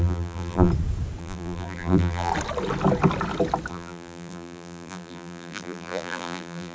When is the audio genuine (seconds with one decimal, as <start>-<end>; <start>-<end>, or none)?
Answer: 0.7-1.2; 2.3-3.7